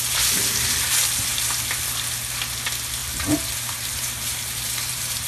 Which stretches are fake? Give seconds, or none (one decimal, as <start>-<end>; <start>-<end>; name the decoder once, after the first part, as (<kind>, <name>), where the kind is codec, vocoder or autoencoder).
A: 3.0-5.3 (vocoder, BigVGAN v2)